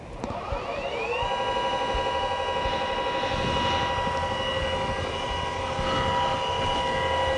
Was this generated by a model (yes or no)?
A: no